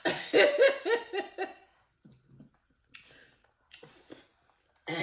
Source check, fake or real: real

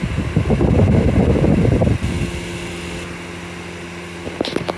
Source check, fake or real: real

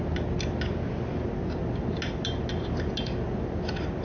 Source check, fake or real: real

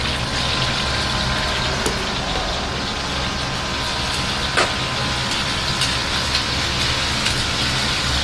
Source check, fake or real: real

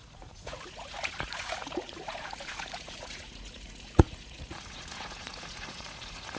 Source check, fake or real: fake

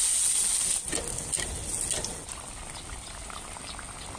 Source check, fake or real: real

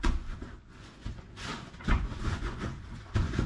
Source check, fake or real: fake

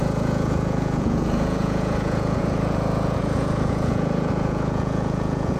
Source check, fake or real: fake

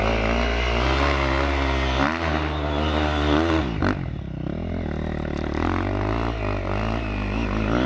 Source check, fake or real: real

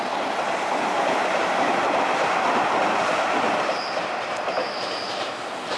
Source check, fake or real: real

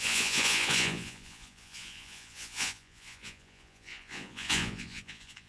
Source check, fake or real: fake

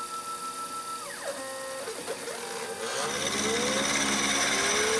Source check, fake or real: real